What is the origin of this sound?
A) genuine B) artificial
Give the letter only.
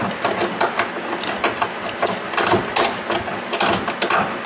A